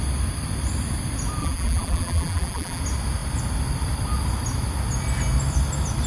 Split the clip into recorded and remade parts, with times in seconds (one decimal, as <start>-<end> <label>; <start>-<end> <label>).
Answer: 0.0-1.4 recorded; 1.4-2.8 remade; 2.8-6.1 recorded